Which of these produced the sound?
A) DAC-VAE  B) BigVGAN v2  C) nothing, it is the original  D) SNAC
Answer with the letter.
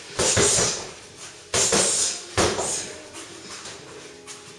C